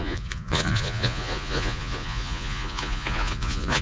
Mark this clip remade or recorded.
remade